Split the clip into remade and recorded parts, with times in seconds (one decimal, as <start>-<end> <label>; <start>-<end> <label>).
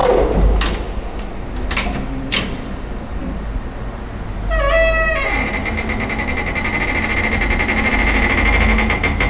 0.0-9.3 recorded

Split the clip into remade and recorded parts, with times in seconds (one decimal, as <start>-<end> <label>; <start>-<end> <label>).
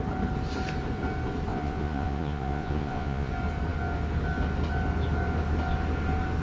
0.0-1.5 recorded; 1.5-3.3 remade; 3.3-6.4 recorded